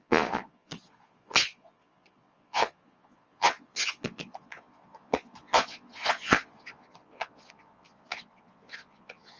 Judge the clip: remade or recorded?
remade